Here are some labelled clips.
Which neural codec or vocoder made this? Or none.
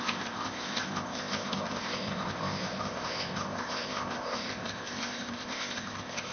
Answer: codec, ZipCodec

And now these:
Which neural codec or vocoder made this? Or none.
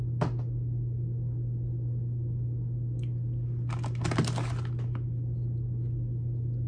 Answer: none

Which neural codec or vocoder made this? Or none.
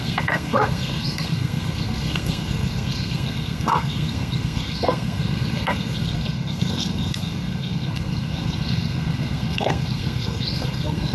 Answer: codec, SNAC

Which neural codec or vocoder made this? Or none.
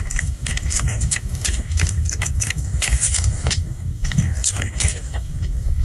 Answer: codec, DAC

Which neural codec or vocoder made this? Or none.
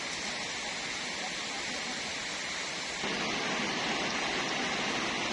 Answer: none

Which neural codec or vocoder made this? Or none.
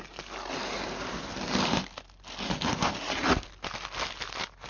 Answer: none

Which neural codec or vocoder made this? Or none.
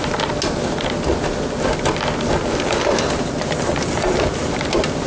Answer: none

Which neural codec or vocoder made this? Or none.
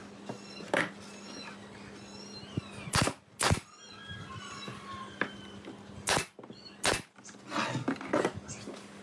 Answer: none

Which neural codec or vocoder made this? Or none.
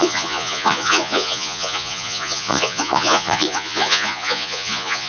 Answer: vocoder, Vocos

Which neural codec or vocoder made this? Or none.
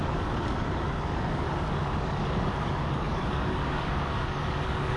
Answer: codec, DAC